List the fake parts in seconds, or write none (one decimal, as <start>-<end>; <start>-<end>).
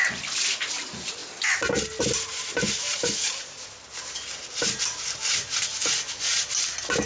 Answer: none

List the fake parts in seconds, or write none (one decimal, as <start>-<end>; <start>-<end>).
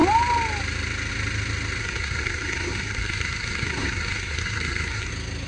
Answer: 1.8-5.1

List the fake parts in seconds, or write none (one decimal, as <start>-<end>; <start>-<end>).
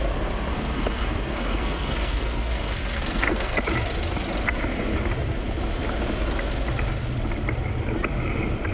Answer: 0.5-3.6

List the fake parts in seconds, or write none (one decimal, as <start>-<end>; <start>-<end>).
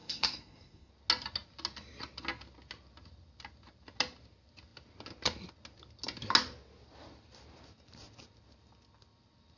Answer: 0.0-0.9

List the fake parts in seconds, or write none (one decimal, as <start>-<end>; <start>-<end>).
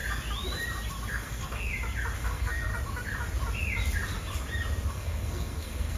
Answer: 1.1-1.7; 2.2-2.7; 4.9-6.0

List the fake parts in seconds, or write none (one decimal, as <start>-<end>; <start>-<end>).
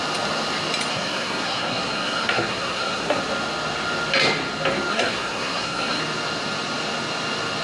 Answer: 0.9-3.2; 4.9-6.0